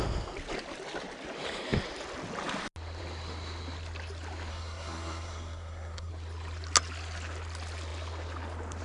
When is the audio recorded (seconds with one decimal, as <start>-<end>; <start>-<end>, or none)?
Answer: 0.0-4.5; 6.1-8.8